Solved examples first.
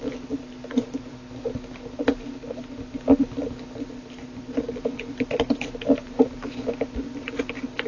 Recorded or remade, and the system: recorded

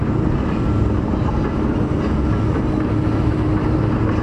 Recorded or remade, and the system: recorded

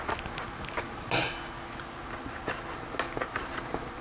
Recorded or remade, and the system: recorded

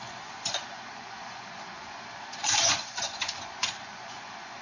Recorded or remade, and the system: remade, vocoder, Vocos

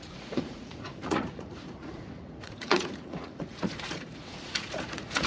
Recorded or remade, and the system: remade, vocoder, Vocos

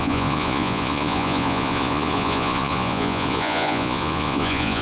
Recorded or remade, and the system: remade, vocoder, Vocos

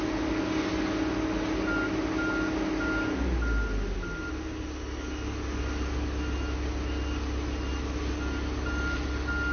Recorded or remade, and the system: recorded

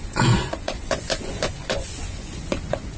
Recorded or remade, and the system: remade, vocoder, Vocos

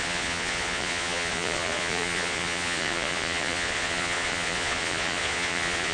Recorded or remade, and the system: remade, vocoder, Vocos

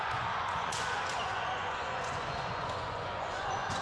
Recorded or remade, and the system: remade, vocoder, Vocos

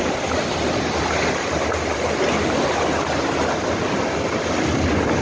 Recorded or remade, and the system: recorded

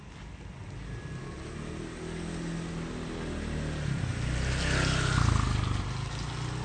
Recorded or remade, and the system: recorded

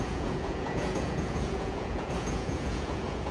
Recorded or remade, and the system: remade, vocoder, Vocos